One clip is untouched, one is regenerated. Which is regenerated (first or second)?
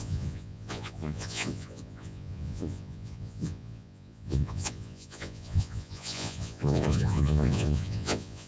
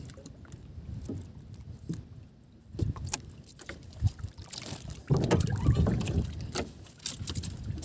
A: first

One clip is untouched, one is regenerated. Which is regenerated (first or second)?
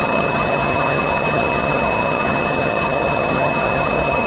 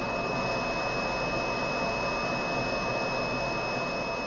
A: first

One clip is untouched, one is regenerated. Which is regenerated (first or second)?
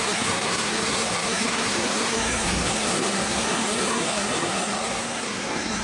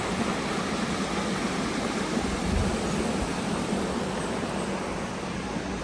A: first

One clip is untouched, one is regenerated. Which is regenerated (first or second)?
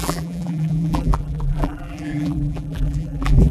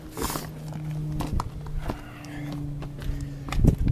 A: first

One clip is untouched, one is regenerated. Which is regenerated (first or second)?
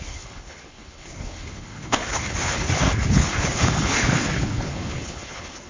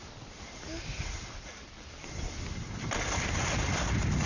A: first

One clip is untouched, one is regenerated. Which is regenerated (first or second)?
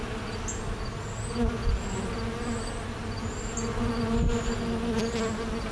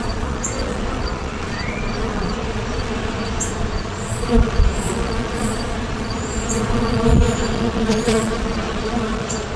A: second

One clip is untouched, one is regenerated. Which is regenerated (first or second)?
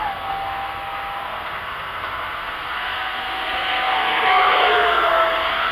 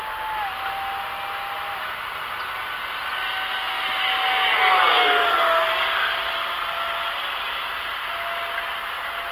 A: first